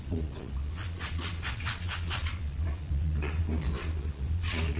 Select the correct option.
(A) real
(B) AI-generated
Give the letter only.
B